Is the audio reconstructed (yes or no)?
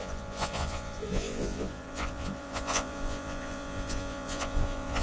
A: yes